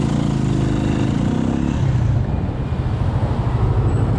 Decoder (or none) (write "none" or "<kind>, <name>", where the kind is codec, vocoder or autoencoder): none